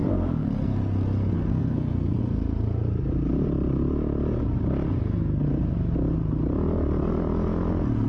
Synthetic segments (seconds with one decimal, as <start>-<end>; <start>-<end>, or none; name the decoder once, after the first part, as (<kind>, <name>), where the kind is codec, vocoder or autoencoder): 0.0-2.2 (codec, SNAC)

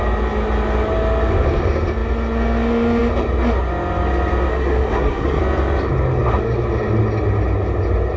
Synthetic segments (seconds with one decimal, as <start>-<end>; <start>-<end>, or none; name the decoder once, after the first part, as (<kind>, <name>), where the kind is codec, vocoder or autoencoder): 4.5-5.4 (codec, SNAC)

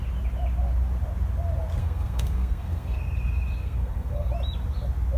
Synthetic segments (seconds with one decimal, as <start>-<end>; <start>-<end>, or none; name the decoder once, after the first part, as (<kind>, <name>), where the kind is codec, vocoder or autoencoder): 1.8-3.0 (codec, SNAC); 3.6-4.3

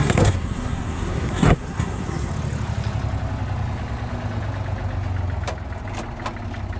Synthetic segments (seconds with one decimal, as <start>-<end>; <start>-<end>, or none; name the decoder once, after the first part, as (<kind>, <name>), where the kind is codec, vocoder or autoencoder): 0.0-2.3 (codec, SNAC)

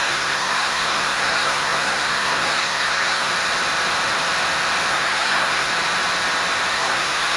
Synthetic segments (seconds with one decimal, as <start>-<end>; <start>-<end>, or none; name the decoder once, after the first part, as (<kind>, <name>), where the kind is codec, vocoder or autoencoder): 0.0-3.3 (codec, SNAC); 4.9-5.7; 6.7-7.4

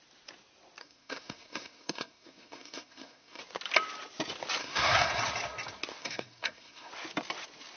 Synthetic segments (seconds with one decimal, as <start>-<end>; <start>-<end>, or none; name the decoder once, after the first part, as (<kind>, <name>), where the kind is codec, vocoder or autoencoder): 0.8-3.4 (codec, SNAC); 4.6-5.1; 6.0-6.9

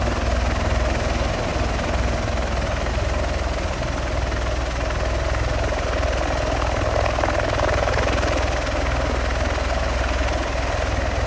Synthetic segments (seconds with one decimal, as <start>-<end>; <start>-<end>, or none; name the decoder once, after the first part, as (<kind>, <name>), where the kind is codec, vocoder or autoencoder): none

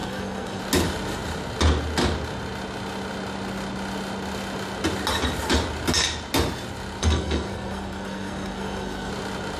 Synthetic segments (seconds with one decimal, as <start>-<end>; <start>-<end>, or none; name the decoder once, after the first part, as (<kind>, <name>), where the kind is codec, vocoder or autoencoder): 0.0-0.6 (codec, SNAC); 7.0-9.1